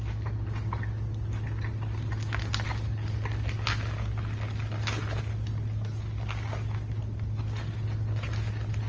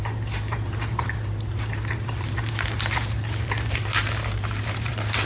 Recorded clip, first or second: first